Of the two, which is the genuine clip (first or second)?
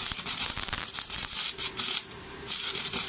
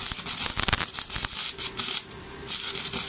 second